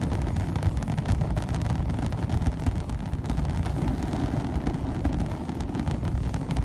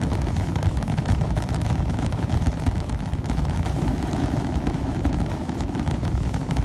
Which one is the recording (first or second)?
first